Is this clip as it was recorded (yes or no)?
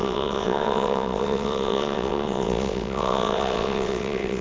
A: no